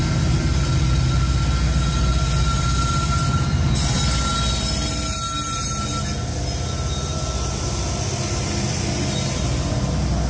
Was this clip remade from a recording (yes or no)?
no